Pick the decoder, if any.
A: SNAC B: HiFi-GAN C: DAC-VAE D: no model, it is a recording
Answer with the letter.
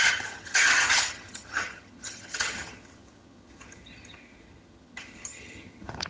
B